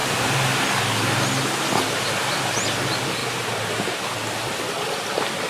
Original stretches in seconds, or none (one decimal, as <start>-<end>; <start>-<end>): 0.6-3.2; 3.9-5.5